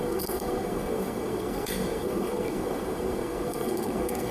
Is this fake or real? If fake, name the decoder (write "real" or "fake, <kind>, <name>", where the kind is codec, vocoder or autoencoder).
fake, codec, SNAC